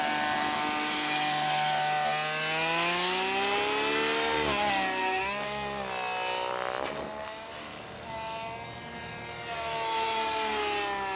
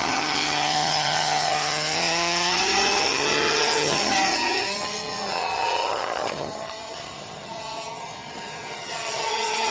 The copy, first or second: second